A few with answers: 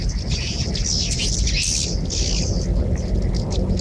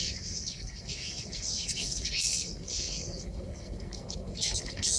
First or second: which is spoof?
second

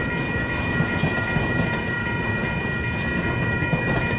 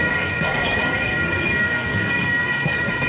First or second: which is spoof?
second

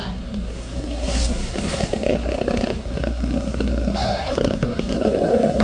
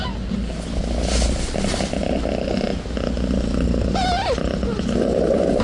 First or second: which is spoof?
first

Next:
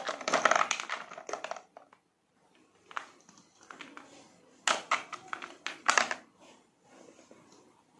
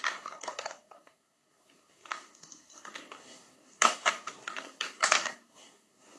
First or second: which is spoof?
second